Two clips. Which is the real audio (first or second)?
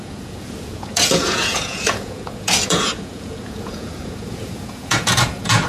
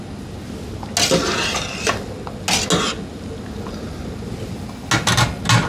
second